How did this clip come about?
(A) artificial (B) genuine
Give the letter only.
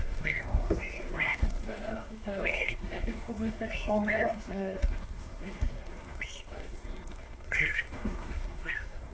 A